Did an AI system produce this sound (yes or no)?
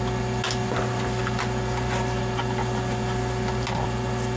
no